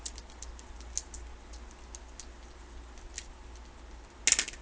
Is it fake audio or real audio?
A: real